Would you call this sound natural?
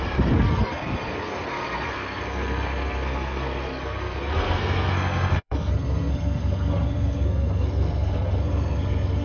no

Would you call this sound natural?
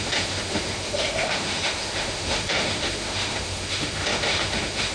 no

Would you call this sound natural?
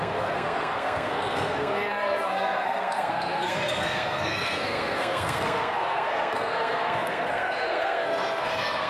no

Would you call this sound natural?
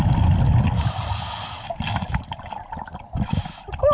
yes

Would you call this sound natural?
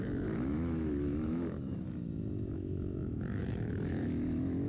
no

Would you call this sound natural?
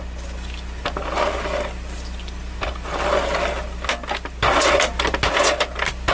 yes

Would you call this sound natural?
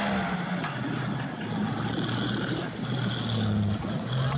yes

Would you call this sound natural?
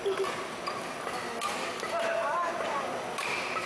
yes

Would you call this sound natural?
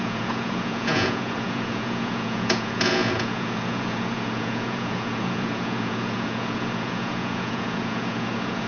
no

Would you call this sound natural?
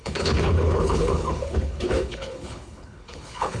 no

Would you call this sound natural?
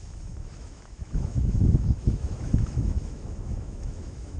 no